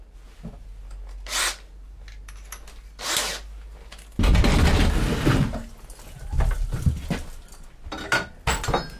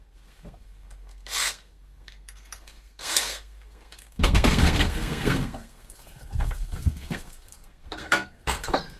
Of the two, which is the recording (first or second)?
first